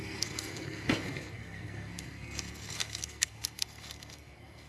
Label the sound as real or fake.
fake